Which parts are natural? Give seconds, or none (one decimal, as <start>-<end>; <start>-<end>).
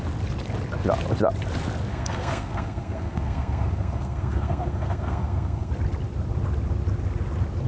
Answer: 0.0-1.9; 5.7-7.7